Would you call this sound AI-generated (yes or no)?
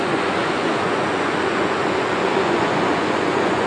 yes